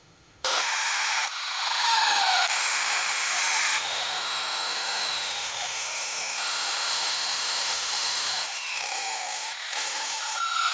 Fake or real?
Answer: fake